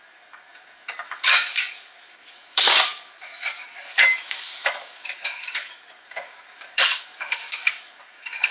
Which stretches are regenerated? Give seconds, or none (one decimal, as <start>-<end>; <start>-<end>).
0.0-8.5